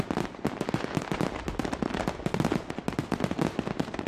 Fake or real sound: real